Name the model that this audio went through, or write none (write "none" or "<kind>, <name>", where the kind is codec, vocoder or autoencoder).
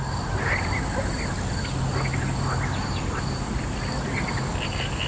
none